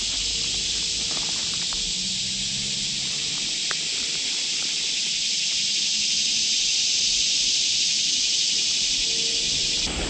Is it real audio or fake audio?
real